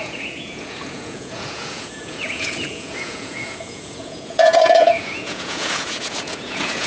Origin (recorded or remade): remade